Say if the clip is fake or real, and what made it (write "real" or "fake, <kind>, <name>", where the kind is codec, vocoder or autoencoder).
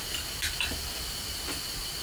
fake, vocoder, BigVGAN v2